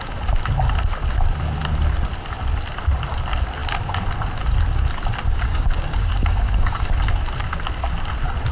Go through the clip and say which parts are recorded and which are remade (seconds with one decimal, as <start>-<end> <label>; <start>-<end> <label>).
0.0-5.5 recorded; 5.5-6.9 remade; 6.9-8.5 recorded